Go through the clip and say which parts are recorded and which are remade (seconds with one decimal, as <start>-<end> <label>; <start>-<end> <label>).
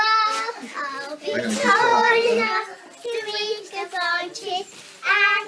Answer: 0.0-5.5 recorded